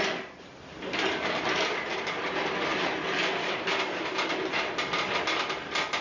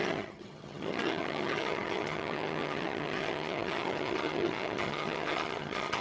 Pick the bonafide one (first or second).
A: first